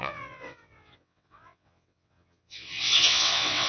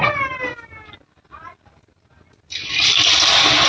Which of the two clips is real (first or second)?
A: second